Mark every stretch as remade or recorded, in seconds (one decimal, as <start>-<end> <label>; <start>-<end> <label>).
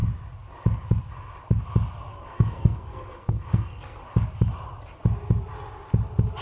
0.0-2.1 recorded; 2.1-4.0 remade; 4.0-6.4 recorded